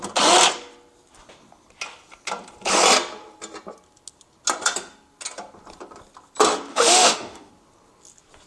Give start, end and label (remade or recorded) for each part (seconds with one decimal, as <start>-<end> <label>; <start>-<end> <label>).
0.0-6.7 recorded; 6.7-7.5 remade; 7.5-8.5 recorded

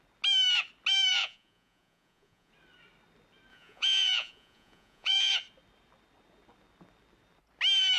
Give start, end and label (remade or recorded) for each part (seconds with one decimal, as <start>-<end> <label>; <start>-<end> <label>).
0.0-1.2 recorded; 1.2-2.5 remade; 2.5-3.5 recorded; 3.5-5.3 remade; 5.3-8.0 recorded